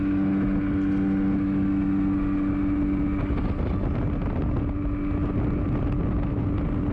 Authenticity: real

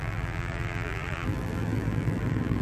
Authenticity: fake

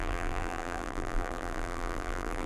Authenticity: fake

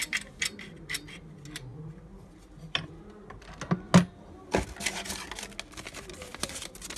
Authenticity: real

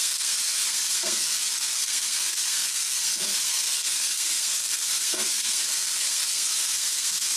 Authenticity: fake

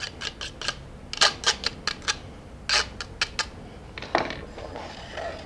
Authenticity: real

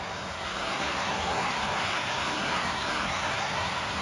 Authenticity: fake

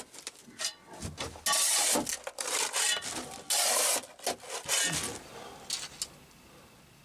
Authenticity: real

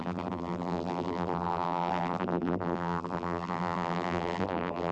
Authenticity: fake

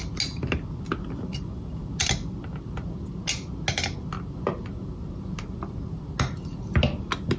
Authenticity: real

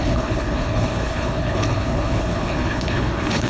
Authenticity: fake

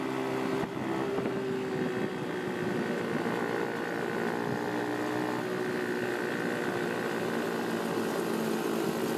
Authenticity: real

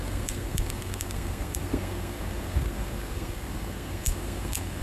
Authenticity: fake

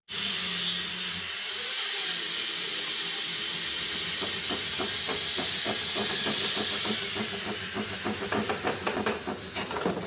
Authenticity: real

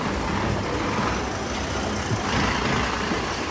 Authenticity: real